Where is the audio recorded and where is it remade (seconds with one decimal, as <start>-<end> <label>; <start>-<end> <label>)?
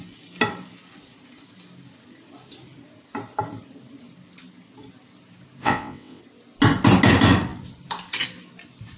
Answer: 0.0-5.6 recorded; 5.6-6.2 remade; 6.2-9.0 recorded